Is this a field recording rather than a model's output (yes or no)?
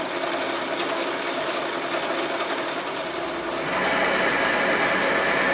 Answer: yes